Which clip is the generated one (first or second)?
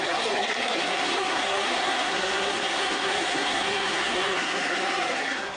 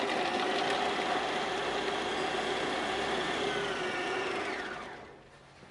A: first